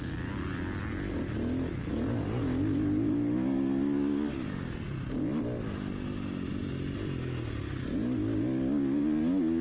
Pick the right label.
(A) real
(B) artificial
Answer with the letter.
A